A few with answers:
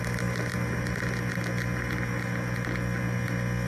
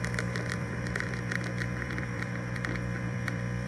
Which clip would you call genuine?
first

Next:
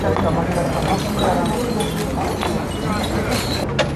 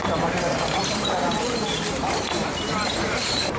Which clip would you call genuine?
first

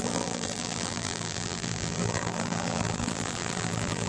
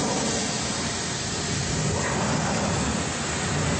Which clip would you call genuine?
second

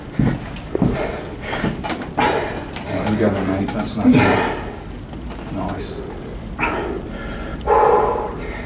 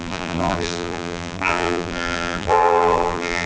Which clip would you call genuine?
first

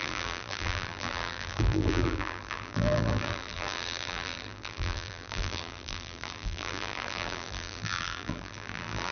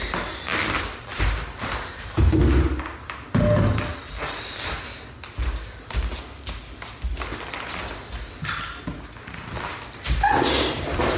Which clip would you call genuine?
second